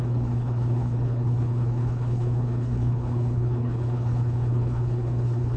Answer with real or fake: fake